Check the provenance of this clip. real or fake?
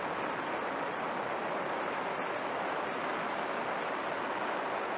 real